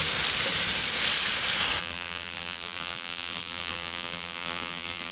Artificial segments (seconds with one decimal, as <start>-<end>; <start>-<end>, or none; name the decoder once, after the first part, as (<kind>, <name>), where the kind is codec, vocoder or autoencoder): 1.8-5.1 (vocoder, BigVGAN v2)